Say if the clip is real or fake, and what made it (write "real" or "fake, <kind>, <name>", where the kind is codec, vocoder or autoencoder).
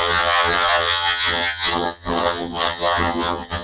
fake, vocoder, HiFi-GAN